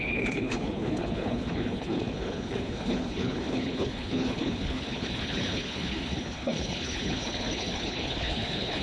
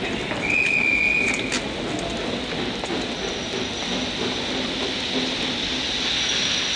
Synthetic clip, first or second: first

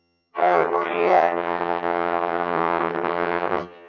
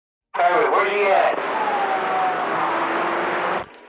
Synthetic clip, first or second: first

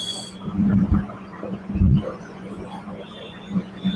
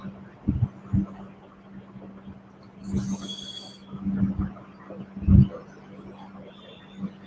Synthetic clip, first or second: first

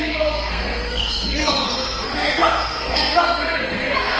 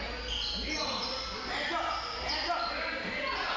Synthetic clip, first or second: first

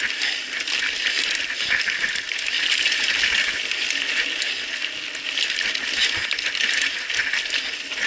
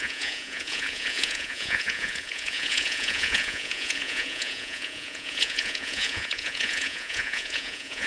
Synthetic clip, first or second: second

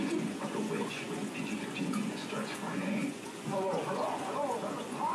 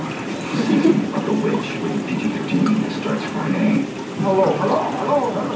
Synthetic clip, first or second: first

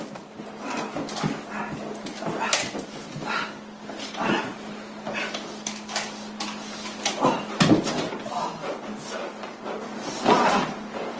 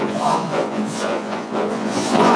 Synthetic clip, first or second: second